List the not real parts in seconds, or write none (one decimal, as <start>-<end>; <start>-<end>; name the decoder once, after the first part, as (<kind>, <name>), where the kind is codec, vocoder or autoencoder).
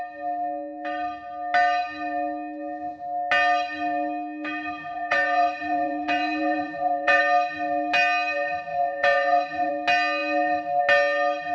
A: 4.8-7.2 (vocoder, Vocos); 8.7-9.7